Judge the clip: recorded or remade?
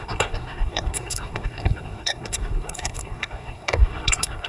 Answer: remade